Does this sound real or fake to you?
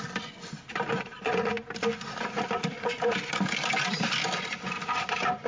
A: real